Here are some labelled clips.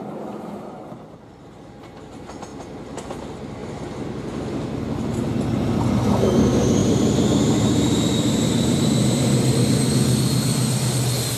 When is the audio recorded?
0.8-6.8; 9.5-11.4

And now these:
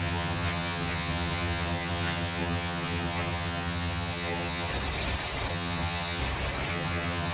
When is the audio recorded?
4.7-5.5; 6.2-6.7

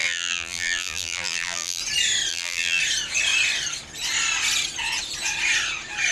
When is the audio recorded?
1.8-2.3; 2.8-6.1